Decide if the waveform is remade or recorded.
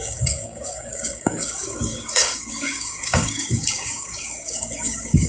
remade